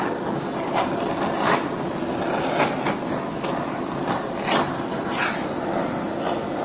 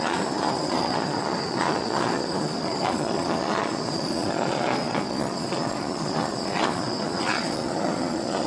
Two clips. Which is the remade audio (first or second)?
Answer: second